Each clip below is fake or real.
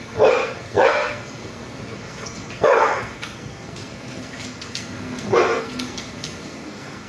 fake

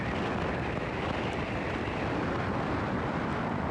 real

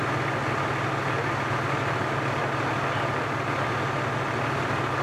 real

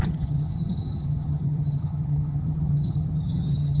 fake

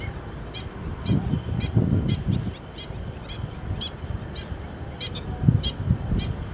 real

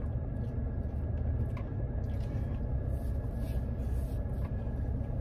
real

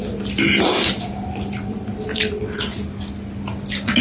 real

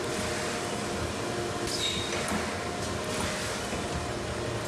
real